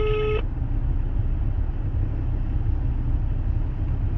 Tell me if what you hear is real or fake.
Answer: real